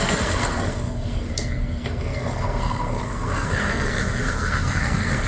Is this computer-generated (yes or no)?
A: yes